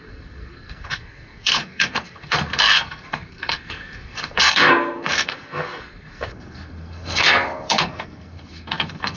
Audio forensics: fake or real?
fake